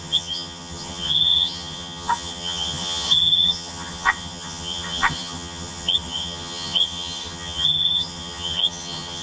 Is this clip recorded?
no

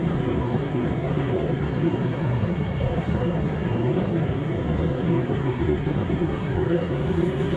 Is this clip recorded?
no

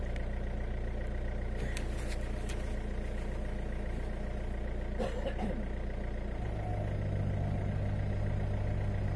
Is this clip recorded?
yes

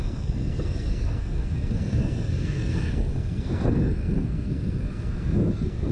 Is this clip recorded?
no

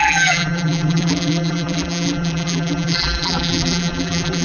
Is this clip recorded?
no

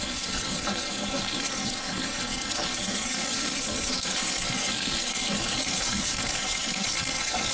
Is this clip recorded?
no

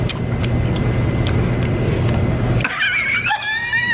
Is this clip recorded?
yes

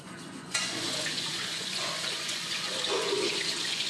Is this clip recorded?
no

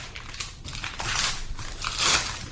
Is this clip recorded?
no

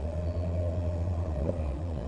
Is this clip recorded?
no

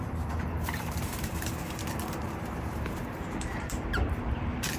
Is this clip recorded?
no